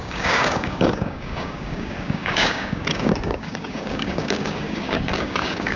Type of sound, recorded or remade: remade